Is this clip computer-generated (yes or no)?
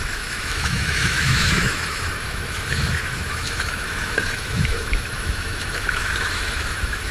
yes